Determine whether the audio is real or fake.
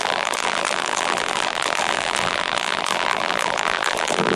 fake